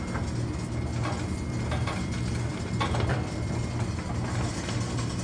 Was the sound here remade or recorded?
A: recorded